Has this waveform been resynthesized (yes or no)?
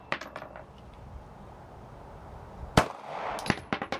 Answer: no